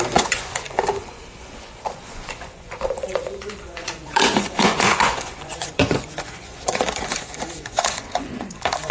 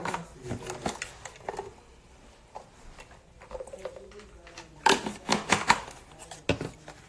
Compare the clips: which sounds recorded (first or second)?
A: second